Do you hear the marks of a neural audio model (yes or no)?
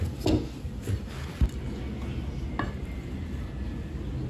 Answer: no